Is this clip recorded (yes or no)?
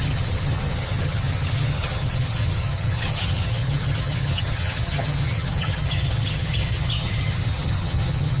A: no